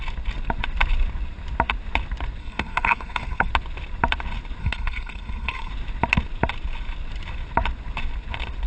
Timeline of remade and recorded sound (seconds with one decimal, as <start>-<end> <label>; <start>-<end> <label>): 0.0-2.4 recorded; 2.4-3.5 remade; 3.5-4.6 recorded; 4.6-5.7 remade; 5.7-8.7 recorded